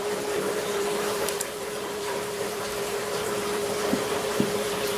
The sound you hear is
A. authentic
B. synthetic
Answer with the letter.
B